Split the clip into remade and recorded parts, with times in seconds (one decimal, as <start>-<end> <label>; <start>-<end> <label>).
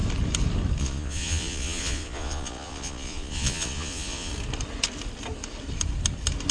0.0-0.8 recorded; 0.8-4.3 remade; 4.3-6.5 recorded